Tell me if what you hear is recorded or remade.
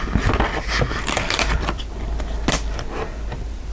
remade